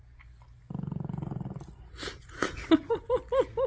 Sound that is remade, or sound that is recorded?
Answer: recorded